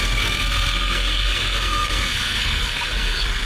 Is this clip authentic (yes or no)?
no